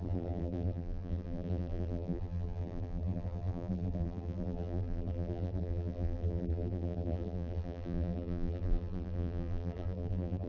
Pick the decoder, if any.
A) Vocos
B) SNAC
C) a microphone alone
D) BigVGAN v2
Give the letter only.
D